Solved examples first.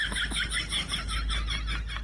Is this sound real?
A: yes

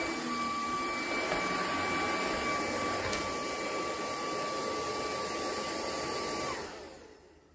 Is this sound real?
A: yes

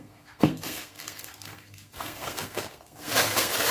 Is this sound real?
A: no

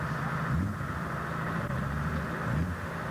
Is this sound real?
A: yes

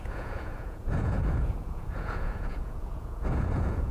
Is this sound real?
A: no